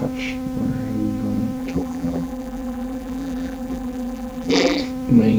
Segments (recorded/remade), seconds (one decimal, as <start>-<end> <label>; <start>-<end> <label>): 0.0-1.6 recorded; 1.6-4.8 remade; 4.8-5.4 recorded